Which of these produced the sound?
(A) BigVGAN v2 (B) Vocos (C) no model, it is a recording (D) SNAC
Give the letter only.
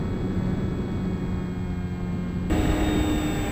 C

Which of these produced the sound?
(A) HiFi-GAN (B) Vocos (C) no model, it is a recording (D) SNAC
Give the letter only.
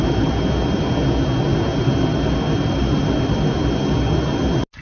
C